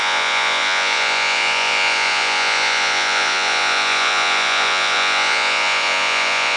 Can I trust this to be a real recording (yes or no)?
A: no